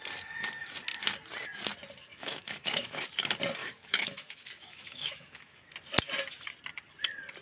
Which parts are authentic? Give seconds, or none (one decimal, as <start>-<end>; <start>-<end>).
0.0-2.1; 3.0-3.6; 5.7-7.4